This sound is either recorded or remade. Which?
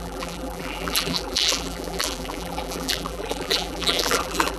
remade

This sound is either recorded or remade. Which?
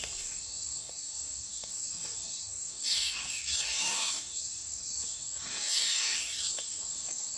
remade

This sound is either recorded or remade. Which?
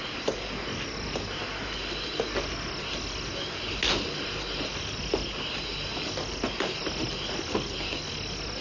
recorded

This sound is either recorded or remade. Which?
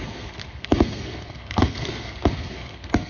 remade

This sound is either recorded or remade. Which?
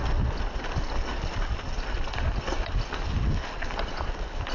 recorded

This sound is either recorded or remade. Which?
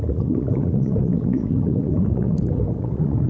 remade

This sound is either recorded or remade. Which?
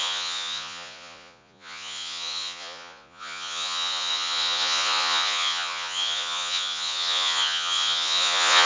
remade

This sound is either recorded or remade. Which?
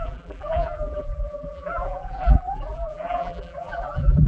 remade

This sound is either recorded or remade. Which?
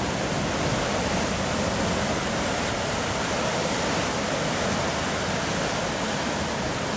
recorded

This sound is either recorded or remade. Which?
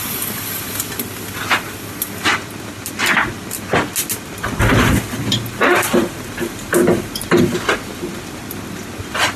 recorded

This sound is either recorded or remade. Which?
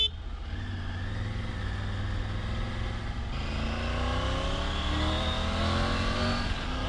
recorded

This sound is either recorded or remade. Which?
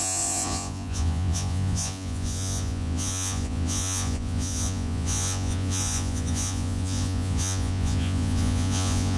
remade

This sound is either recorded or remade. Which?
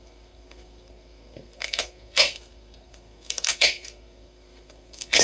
remade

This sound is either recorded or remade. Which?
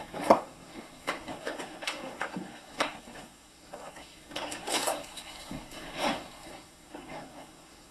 remade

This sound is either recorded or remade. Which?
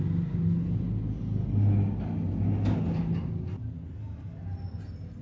recorded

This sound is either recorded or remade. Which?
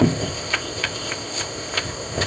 remade